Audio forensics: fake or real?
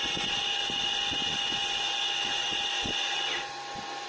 real